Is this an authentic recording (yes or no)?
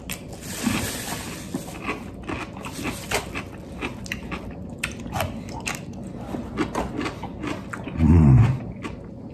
yes